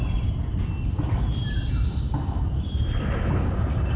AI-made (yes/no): no